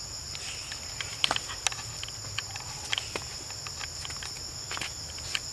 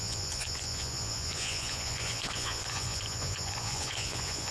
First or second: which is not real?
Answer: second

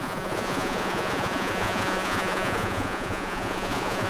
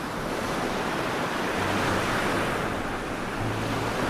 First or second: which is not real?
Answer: first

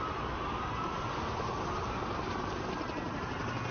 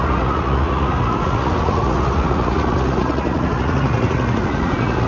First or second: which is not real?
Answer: second